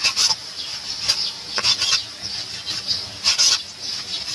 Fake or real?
real